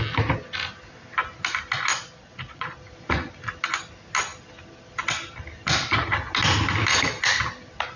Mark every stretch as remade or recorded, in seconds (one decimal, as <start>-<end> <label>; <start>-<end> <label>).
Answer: 0.0-1.9 recorded; 1.9-2.8 remade; 2.8-8.0 recorded

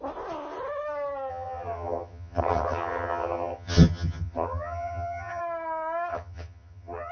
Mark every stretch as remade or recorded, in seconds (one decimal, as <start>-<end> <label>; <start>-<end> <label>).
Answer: 0.0-1.3 recorded; 1.3-5.4 remade; 5.4-6.1 recorded; 6.1-7.1 remade

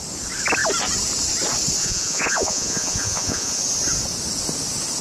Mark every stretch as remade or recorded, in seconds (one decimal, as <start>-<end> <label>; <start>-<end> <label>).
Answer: 0.0-1.8 recorded; 1.8-3.6 remade; 3.6-5.0 recorded

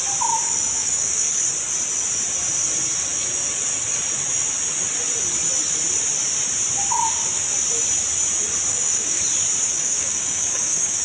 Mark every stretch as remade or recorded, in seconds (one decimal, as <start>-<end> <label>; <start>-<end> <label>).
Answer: 0.0-0.8 recorded; 0.8-1.4 remade; 1.4-8.7 recorded; 8.7-9.2 remade; 9.2-9.7 recorded; 9.7-11.0 remade